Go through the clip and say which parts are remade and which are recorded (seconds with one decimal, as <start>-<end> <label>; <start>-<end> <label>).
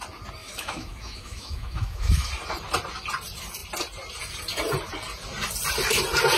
0.0-0.4 recorded; 0.4-2.3 remade; 2.3-6.4 recorded